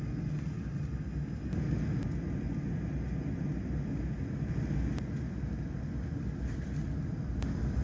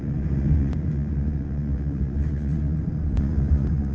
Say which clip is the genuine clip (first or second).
first